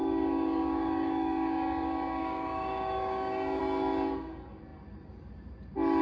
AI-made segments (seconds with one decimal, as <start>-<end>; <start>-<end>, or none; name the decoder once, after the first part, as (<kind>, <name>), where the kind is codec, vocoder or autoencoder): 0.0-3.6 (codec, DAC)

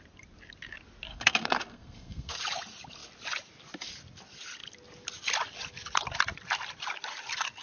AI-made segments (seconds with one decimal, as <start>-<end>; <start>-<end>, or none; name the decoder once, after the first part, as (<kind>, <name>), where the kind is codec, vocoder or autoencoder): 1.1-2.4 (codec, SNAC)